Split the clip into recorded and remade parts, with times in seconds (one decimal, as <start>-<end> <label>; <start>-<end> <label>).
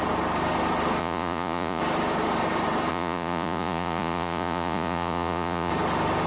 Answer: 0.0-1.0 recorded; 1.0-1.8 remade; 1.8-2.9 recorded; 2.9-5.7 remade; 5.7-6.3 recorded